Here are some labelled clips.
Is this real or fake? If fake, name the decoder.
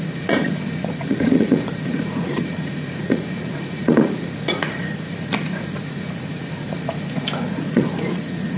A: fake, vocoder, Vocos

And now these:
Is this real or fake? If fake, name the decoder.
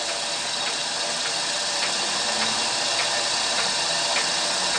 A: real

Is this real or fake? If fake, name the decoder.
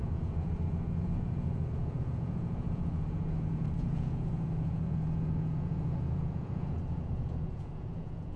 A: fake, vocoder, Vocos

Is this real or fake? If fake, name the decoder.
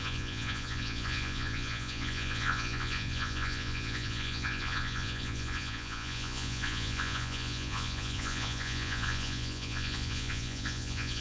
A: fake, vocoder, Vocos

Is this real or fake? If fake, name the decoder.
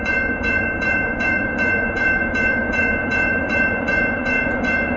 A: fake, vocoder, Vocos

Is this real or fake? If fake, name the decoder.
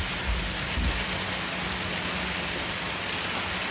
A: real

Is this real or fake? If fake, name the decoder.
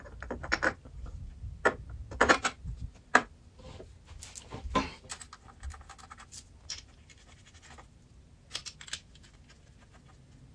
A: real